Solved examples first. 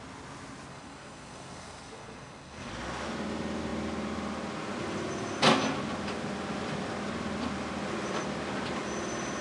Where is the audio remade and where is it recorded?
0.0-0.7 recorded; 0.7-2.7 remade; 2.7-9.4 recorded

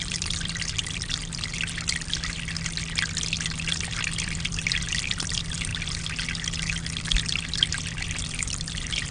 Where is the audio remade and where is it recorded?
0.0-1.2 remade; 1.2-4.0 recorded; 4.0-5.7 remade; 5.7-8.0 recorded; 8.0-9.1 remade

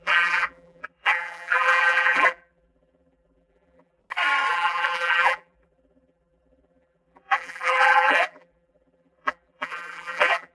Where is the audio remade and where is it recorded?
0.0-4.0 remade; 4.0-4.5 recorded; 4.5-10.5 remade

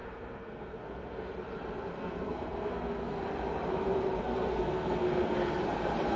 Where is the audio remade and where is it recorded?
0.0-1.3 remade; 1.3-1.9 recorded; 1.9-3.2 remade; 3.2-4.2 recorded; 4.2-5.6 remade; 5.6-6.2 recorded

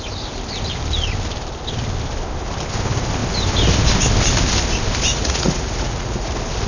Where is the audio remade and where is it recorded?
0.0-5.1 recorded; 5.1-6.3 remade; 6.3-6.7 recorded

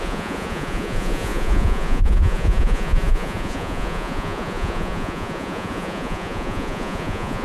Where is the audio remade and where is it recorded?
0.0-7.4 remade

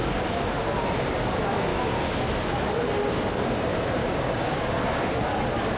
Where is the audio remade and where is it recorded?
0.0-1.7 recorded; 1.7-2.2 remade; 2.2-4.0 recorded; 4.0-5.1 remade; 5.1-5.8 recorded

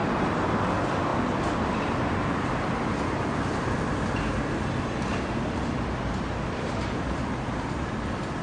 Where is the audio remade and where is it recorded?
0.0-0.5 remade; 0.5-8.4 recorded